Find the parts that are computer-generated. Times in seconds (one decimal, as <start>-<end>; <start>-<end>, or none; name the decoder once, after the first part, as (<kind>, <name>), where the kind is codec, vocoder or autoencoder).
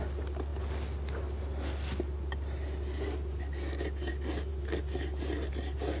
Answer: none